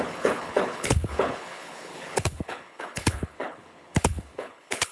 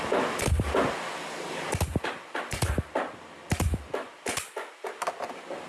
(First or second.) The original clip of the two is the second